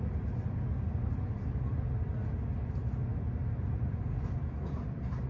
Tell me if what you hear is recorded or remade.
recorded